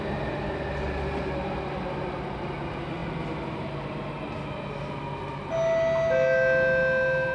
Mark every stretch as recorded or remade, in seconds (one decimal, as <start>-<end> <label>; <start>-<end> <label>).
0.0-7.3 recorded